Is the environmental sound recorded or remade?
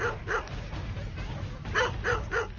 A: recorded